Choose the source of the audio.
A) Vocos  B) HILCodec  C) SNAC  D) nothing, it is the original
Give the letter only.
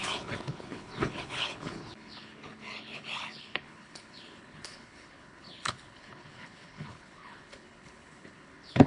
B